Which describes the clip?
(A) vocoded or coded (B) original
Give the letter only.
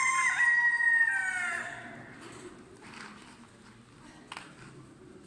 B